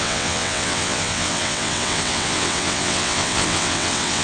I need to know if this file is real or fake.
fake